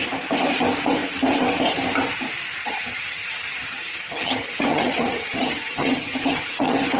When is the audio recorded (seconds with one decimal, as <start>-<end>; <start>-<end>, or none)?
0.0-2.6